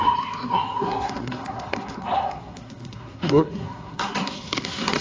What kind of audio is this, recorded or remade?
remade